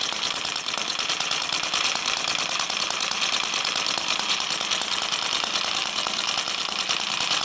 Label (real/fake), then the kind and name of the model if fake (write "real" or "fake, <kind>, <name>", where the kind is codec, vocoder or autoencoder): fake, vocoder, BigVGAN v2